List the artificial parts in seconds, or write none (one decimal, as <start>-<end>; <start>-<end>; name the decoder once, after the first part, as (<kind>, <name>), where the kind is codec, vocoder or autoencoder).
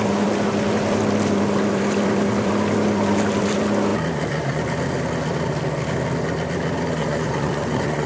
7.0-8.1 (vocoder, Vocos)